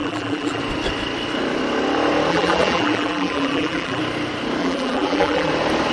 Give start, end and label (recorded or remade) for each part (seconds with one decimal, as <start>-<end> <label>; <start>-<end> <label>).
0.0-0.6 remade; 0.6-2.3 recorded; 2.3-4.0 remade; 4.0-4.6 recorded; 4.6-5.5 remade; 5.5-5.9 recorded

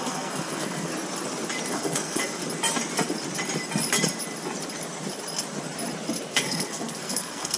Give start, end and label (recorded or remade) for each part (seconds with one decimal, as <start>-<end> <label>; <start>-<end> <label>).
0.0-0.9 remade; 0.9-1.7 recorded; 1.7-2.4 remade; 2.4-6.3 recorded; 6.3-7.6 remade

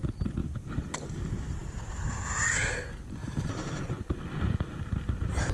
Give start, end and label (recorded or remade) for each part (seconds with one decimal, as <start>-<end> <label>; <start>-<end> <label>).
0.0-0.4 recorded; 0.4-1.2 remade; 1.2-3.2 recorded; 3.2-3.8 remade; 3.8-5.5 recorded

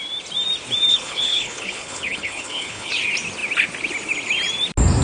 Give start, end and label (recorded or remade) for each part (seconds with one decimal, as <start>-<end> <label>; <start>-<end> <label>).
0.0-0.9 recorded; 0.9-2.9 remade; 2.9-5.0 recorded

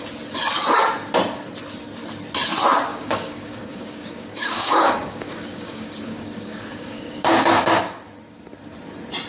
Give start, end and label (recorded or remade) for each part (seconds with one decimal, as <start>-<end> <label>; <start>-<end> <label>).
0.0-2.9 recorded; 2.9-7.8 remade; 7.8-9.3 recorded

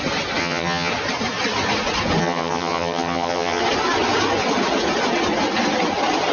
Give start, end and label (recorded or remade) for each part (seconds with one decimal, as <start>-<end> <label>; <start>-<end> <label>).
0.0-0.4 recorded; 0.4-0.9 remade; 0.9-2.2 recorded; 2.2-3.6 remade; 3.6-6.3 recorded